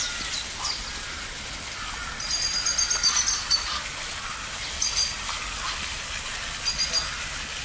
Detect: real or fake real